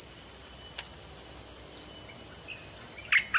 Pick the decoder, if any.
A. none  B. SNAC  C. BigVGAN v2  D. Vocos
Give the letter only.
A